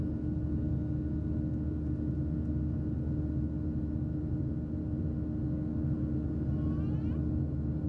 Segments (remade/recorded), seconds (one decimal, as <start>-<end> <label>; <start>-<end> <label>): 0.0-7.9 recorded

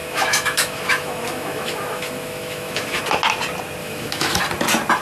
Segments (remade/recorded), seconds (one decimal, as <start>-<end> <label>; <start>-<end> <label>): 0.0-3.0 remade; 3.0-3.8 recorded; 3.8-4.4 remade; 4.4-5.0 recorded